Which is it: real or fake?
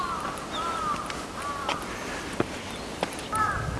real